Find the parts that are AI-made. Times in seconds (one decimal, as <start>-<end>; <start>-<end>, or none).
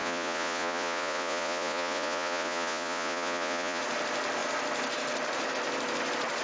0.0-3.8